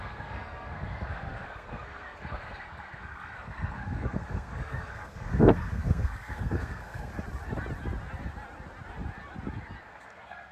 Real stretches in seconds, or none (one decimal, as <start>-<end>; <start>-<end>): 7.1-9.8